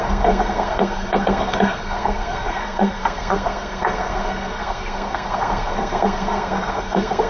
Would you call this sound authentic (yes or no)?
no